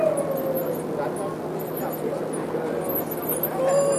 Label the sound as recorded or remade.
recorded